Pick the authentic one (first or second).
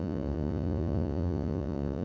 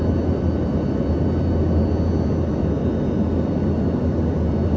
second